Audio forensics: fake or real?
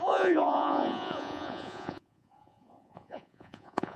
fake